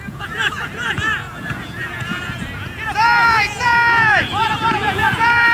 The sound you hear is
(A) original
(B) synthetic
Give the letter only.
B